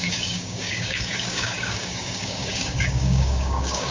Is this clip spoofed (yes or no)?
yes